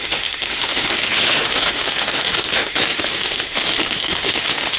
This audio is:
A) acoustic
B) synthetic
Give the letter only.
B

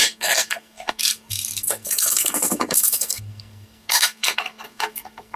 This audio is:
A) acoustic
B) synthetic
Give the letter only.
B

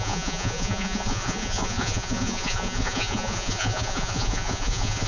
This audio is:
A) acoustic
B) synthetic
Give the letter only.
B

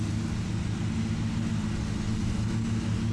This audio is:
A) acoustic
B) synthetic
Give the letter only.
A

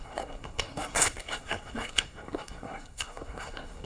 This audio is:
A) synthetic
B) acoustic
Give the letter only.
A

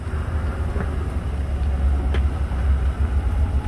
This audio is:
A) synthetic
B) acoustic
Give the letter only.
B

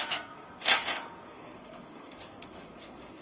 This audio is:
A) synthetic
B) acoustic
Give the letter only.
A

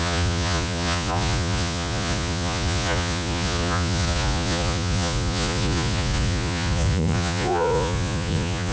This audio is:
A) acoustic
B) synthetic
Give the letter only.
B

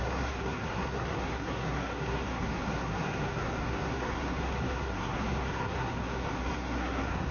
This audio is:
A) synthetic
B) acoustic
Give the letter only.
A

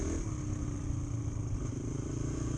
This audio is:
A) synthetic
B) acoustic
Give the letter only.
B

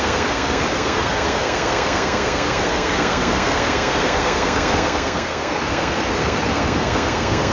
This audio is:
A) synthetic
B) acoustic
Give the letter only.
A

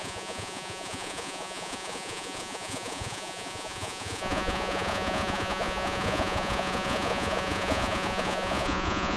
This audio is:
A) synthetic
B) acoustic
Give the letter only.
A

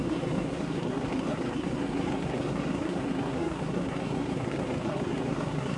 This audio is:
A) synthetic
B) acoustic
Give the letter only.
A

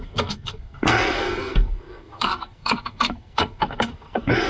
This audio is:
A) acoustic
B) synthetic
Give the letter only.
B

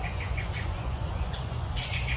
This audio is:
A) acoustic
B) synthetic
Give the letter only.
B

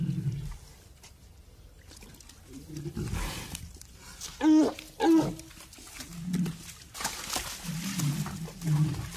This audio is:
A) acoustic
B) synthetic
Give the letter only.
A